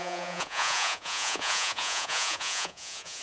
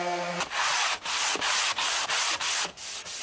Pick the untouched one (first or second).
second